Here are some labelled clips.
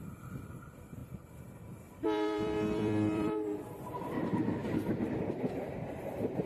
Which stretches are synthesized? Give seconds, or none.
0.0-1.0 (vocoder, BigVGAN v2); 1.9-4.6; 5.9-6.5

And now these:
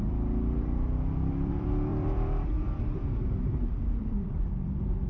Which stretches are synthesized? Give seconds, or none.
0.0-5.1 (vocoder, BigVGAN v2)

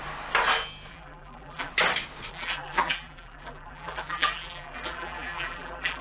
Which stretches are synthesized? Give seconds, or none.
0.9-1.7 (vocoder, BigVGAN v2); 2.3-6.0

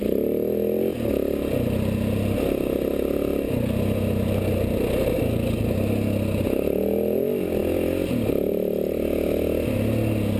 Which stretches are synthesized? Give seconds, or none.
none